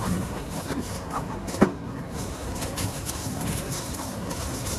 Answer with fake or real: fake